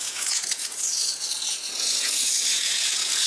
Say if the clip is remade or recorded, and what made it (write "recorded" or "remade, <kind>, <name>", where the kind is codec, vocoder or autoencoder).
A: remade, vocoder, Vocos